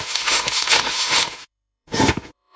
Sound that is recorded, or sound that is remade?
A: remade